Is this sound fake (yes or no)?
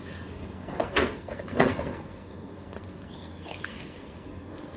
yes